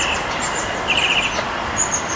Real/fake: real